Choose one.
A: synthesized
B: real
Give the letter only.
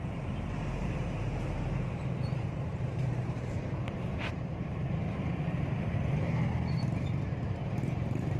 A